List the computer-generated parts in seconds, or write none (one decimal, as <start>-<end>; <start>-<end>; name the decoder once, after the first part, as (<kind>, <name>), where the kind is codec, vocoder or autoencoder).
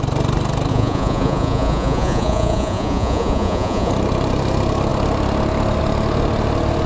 0.7-3.9 (vocoder, Vocos)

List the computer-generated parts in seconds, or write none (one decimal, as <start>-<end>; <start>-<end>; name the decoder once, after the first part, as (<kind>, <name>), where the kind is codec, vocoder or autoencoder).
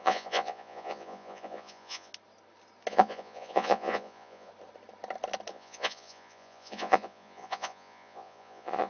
0.0-2.1 (vocoder, Vocos); 2.9-4.5; 5.5-8.9